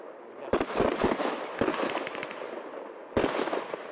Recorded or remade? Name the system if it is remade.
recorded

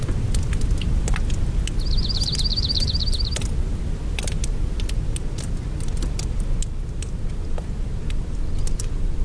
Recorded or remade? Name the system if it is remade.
recorded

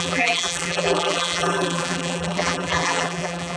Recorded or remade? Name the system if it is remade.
remade, vocoder, BigVGAN v2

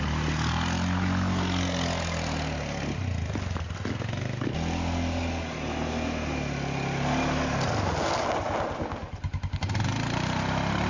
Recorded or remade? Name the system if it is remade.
recorded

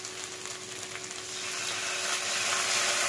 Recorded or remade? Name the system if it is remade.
recorded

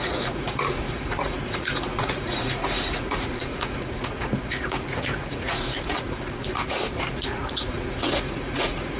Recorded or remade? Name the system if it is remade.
remade, vocoder, Vocos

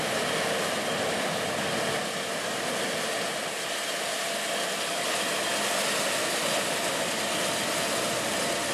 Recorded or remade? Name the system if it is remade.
recorded